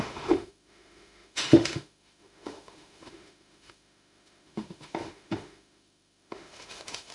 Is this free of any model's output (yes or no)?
no